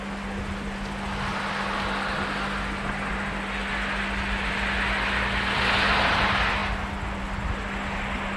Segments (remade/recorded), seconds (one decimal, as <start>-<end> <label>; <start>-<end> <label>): 0.0-8.4 recorded